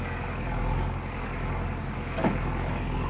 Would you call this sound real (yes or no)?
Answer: no